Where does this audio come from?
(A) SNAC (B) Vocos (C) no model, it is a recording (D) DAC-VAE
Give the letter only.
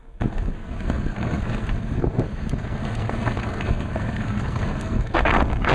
A